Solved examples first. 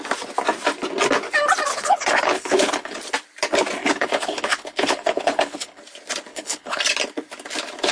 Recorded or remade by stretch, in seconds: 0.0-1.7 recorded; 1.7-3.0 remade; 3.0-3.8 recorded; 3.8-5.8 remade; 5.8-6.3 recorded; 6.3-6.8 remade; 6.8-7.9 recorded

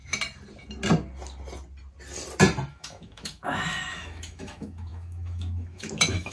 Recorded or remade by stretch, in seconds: 0.0-2.7 recorded; 2.7-6.3 remade

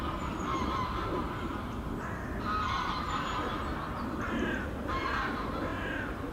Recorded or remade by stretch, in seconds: 0.0-6.3 recorded

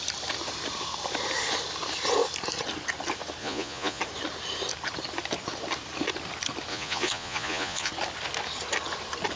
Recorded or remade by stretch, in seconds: 0.0-3.4 recorded; 3.4-4.0 remade; 4.0-6.7 recorded; 6.7-7.9 remade; 7.9-9.4 recorded